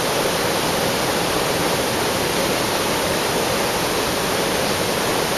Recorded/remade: recorded